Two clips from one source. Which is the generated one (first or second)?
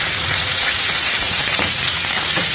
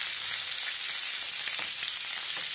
first